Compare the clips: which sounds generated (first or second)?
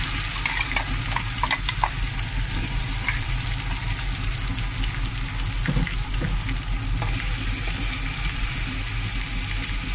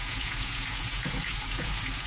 second